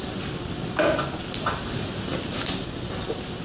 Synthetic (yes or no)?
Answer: no